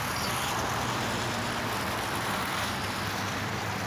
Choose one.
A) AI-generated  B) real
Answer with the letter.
B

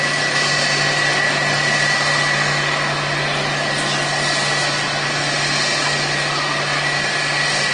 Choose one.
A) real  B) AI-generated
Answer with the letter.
A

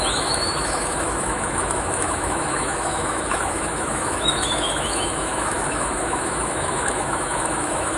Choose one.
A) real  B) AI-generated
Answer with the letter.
B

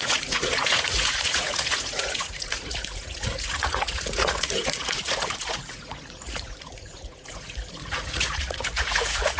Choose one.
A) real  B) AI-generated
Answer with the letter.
B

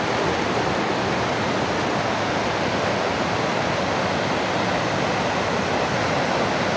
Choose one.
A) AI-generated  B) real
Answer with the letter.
B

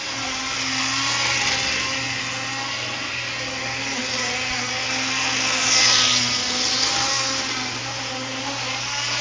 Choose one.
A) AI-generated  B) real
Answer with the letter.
B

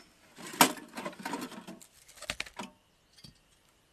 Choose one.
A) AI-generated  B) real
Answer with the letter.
B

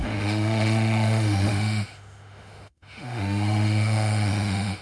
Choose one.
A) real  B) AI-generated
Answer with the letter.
B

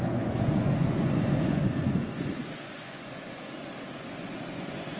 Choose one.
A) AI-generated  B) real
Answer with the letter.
A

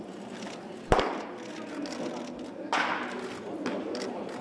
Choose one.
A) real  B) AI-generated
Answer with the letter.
A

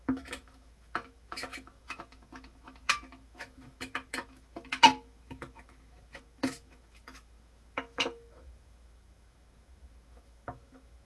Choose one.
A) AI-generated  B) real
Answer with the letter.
A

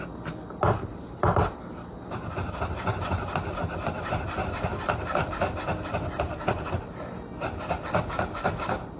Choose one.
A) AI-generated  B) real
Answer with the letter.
B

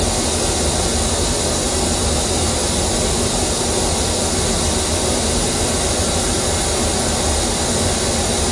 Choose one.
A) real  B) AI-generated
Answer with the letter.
A